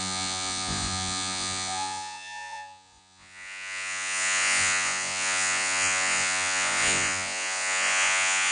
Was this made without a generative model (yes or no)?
no